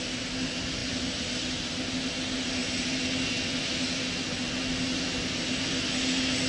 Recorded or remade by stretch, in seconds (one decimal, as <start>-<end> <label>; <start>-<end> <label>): 0.0-6.5 recorded